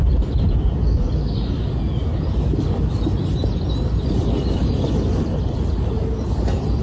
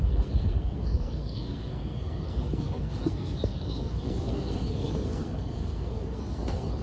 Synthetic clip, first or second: second